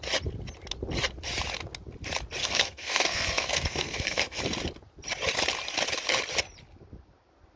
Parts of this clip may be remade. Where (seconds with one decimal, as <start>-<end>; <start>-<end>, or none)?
2.4-4.4